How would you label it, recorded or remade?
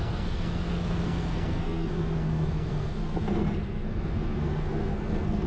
remade